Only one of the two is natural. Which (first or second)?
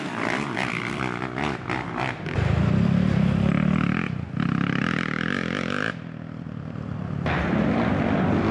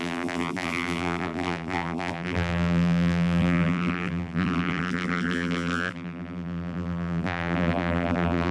first